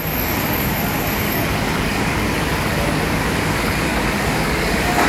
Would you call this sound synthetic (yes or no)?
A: yes